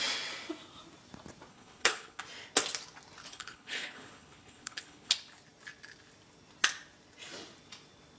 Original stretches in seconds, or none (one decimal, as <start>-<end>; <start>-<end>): 0.0-1.5; 2.2-3.3; 5.1-8.2